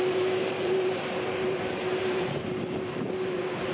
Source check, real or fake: fake